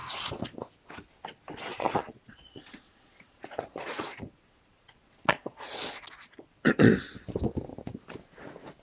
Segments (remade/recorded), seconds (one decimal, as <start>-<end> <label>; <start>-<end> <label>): 0.0-1.7 recorded; 1.7-6.9 remade; 6.9-8.8 recorded